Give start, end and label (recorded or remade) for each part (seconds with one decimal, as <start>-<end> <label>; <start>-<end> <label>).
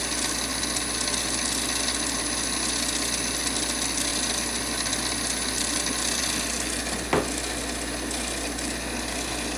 0.0-9.6 recorded